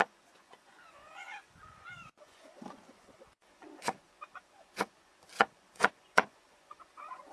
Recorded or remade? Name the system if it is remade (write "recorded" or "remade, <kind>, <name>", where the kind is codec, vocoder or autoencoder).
remade, vocoder, Vocos